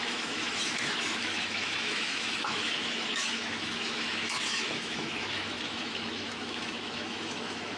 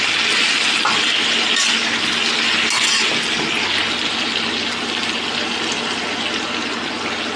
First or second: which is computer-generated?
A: first